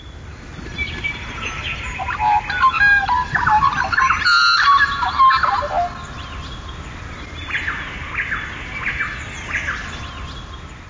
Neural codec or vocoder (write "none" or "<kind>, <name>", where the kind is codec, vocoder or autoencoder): none